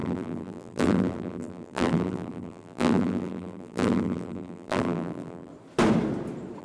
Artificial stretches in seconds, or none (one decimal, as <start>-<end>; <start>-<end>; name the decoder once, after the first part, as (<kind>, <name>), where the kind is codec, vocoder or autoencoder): 0.0-5.5 (vocoder, BigVGAN v2)